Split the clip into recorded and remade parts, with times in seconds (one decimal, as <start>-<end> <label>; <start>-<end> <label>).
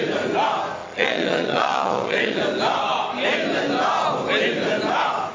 0.0-0.8 recorded; 0.8-2.4 remade; 2.4-5.3 recorded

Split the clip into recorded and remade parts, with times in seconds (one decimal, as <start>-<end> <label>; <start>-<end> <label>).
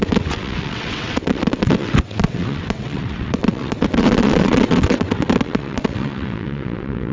0.0-7.1 remade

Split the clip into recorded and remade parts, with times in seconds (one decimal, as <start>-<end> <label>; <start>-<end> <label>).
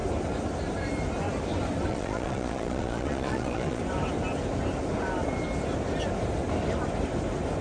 0.0-1.9 recorded; 1.9-3.8 remade; 3.8-7.6 recorded